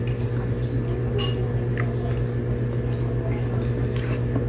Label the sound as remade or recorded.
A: recorded